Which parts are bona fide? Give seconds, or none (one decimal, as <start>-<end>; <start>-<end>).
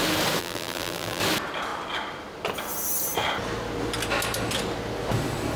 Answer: 0.0-0.4; 1.2-5.6